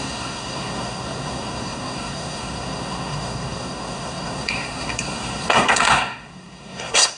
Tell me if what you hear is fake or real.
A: fake